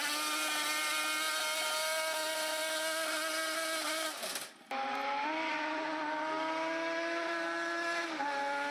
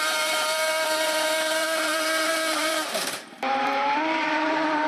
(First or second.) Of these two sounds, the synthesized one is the second